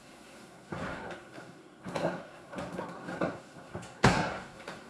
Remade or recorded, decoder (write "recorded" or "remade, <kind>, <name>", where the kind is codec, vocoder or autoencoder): remade, codec, SNAC